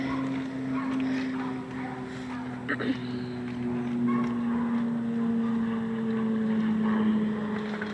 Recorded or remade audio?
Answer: recorded